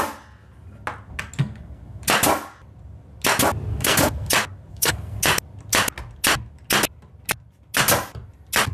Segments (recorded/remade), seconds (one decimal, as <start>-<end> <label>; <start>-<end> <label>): 0.0-1.4 recorded; 1.4-2.0 remade; 2.0-3.7 recorded; 3.7-4.3 remade; 4.3-4.7 recorded; 4.7-5.2 remade; 5.2-8.7 recorded